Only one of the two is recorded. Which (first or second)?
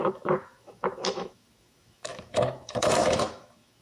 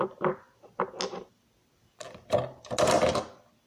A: second